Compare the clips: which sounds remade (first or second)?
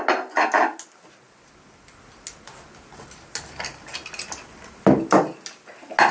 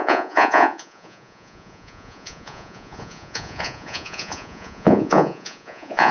second